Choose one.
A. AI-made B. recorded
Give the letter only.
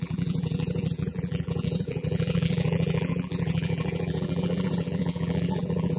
A